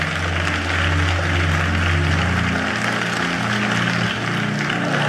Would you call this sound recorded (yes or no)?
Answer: yes